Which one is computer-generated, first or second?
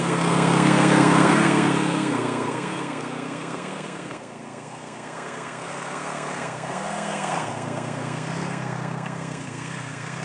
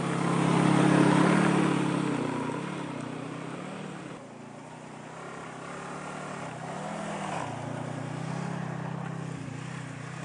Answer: first